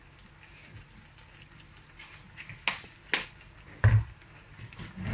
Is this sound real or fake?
real